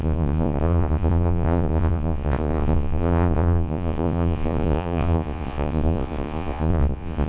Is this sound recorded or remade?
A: remade